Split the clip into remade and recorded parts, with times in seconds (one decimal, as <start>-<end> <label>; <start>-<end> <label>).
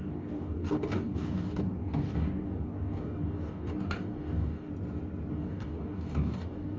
0.0-4.7 remade; 4.7-5.3 recorded; 5.3-6.8 remade